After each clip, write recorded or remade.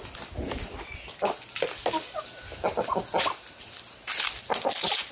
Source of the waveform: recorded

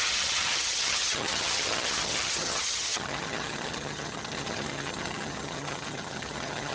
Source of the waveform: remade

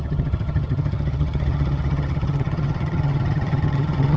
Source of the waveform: remade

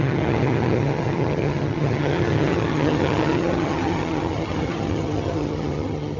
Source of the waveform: remade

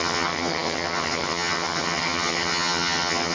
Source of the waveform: remade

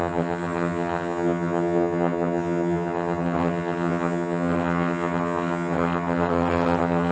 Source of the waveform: remade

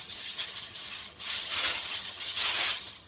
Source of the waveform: remade